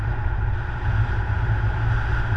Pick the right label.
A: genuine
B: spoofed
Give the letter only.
A